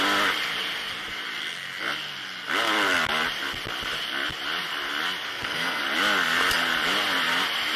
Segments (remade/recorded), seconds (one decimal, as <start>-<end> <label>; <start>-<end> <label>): 0.0-5.3 recorded; 5.3-5.8 remade; 5.8-7.8 recorded

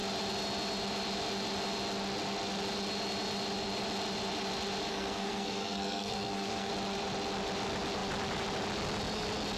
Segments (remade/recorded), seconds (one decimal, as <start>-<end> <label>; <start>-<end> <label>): 0.0-4.9 recorded; 4.9-6.7 remade; 6.7-9.6 recorded

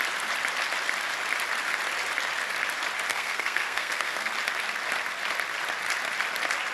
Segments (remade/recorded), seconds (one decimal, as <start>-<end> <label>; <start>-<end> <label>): 0.0-3.1 recorded; 3.1-4.3 remade; 4.3-6.7 recorded

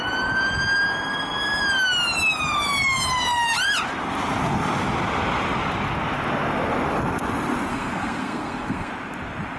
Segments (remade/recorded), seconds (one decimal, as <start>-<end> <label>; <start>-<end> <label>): 0.0-7.7 recorded; 7.7-8.9 remade; 8.9-9.6 recorded

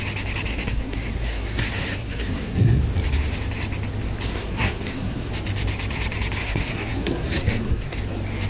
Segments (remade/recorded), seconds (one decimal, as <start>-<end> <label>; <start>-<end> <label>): 0.0-0.5 recorded; 0.5-2.8 remade; 2.8-4.3 recorded; 4.3-5.3 remade; 5.3-6.4 recorded; 6.4-8.0 remade; 8.0-8.5 recorded

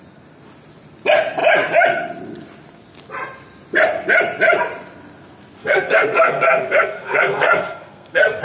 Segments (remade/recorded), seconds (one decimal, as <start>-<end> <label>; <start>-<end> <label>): 0.0-5.6 recorded; 5.6-8.4 remade

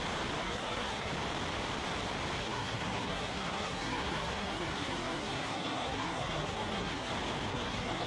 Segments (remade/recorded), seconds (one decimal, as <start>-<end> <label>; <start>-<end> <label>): 0.0-0.4 recorded; 0.4-1.1 remade; 1.1-2.4 recorded; 2.4-7.1 remade; 7.1-7.5 recorded; 7.5-8.1 remade